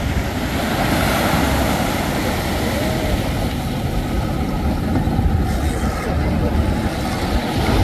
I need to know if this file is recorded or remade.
recorded